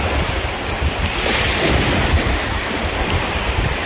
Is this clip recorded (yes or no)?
yes